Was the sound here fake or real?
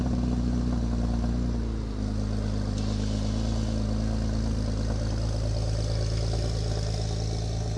real